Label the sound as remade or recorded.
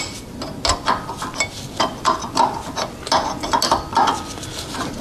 recorded